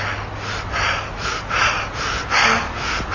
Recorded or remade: recorded